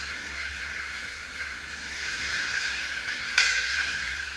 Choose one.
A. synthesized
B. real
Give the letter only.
A